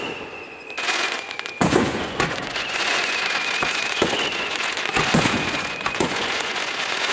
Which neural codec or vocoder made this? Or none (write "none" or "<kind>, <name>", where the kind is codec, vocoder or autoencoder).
vocoder, Vocos